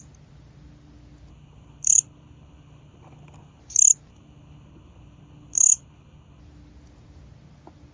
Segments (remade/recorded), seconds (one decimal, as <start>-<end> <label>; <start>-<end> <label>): 0.0-1.3 recorded; 1.3-3.6 remade; 3.6-4.1 recorded; 4.1-6.4 remade; 6.4-7.9 recorded